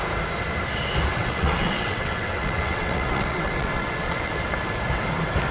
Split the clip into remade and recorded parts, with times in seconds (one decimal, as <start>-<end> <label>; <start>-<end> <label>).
0.0-1.1 recorded; 1.1-4.3 remade; 4.3-5.5 recorded